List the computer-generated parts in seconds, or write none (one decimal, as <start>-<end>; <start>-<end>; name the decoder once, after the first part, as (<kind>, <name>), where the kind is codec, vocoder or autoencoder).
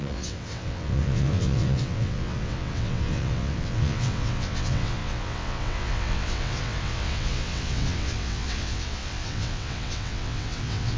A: 0.0-11.0 (vocoder, WaveNeXt)